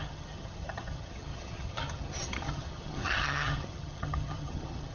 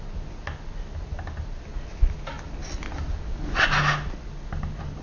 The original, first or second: second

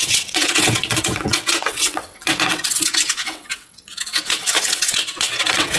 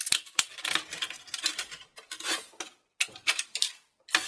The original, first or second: second